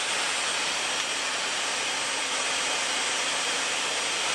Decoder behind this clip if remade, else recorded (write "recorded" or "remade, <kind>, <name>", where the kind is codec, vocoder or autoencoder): recorded